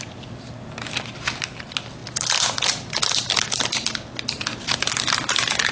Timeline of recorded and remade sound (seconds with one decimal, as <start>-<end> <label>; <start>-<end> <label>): 0.0-5.7 recorded